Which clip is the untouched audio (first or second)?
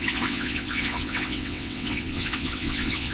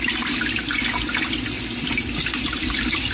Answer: second